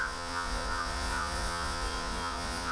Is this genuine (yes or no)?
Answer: no